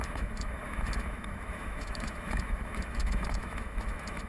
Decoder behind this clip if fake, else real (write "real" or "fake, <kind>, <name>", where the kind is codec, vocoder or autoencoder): fake, autoencoder, DAC-VAE